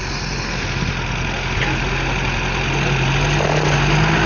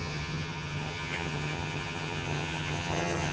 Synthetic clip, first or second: second